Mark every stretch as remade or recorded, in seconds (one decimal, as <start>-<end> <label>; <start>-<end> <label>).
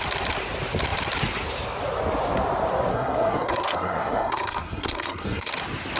0.0-2.9 recorded; 2.9-5.5 remade; 5.5-6.0 recorded